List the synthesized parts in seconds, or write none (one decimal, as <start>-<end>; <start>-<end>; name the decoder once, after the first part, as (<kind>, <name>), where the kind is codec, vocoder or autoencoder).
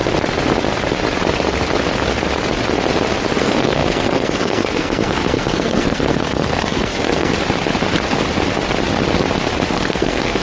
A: 3.4-7.3 (codec, SNAC); 9.7-10.4